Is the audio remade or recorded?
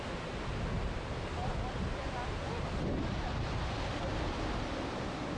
recorded